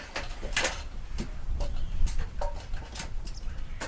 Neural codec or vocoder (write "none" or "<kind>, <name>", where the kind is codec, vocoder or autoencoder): none